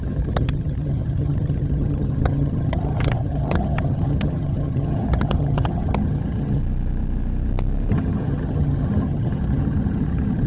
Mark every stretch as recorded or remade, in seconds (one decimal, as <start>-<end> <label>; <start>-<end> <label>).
0.0-6.6 remade; 6.6-7.9 recorded; 7.9-10.5 remade